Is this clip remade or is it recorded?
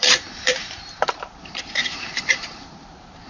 remade